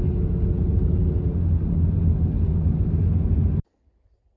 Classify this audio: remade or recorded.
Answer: recorded